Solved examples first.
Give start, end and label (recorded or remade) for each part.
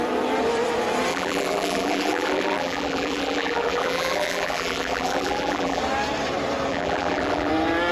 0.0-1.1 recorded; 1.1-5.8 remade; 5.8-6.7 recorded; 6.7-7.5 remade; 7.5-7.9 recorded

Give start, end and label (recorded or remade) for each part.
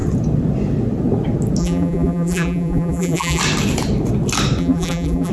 0.0-1.6 recorded; 1.6-3.4 remade; 3.4-4.6 recorded; 4.6-5.3 remade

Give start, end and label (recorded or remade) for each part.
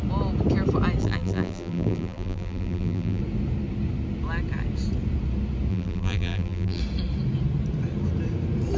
0.0-1.0 recorded; 1.0-3.2 remade; 3.2-5.7 recorded; 5.7-6.8 remade; 6.8-8.8 recorded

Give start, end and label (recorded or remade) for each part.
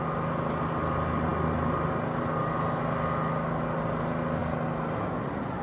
0.0-5.6 recorded